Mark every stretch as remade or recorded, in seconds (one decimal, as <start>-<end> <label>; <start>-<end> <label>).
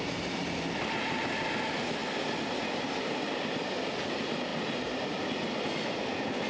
0.0-6.5 recorded